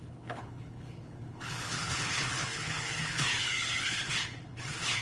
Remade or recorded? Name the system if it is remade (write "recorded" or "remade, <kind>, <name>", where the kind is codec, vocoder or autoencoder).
remade, codec, HILCodec